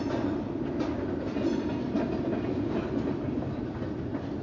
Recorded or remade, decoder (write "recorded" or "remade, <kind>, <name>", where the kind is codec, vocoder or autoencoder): recorded